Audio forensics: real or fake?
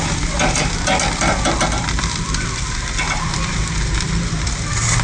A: real